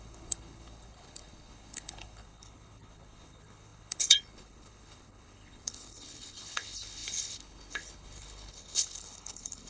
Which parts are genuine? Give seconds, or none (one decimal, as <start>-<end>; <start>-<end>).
none